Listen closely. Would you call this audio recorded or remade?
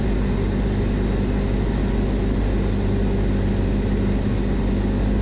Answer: recorded